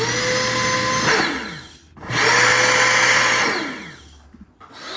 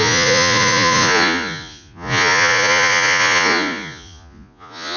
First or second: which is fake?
second